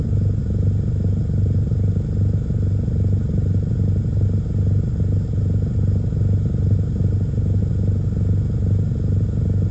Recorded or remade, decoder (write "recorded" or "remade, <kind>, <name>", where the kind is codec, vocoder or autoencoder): recorded